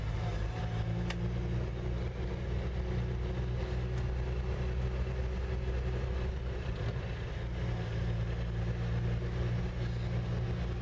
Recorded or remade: recorded